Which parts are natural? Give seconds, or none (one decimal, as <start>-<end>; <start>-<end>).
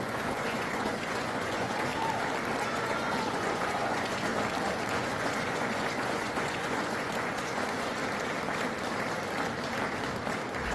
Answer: 1.9-2.6; 4.3-4.9; 8.0-10.7